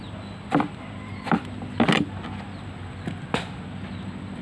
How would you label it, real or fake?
real